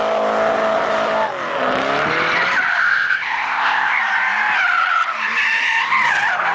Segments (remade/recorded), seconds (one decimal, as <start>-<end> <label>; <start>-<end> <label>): 0.0-2.8 recorded; 2.8-4.0 remade; 4.0-6.5 recorded